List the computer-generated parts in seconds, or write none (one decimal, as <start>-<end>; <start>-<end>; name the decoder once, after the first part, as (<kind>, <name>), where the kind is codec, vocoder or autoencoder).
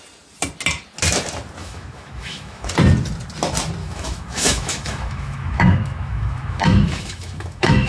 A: 1.6-2.7 (autoencoder, DAC-VAE); 3.8-7.9